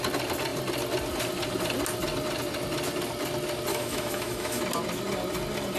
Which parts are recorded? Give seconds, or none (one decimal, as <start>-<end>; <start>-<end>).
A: 0.0-3.7; 4.6-5.8